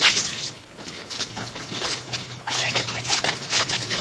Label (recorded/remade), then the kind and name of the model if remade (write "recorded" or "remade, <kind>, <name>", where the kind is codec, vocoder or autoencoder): remade, codec, HILCodec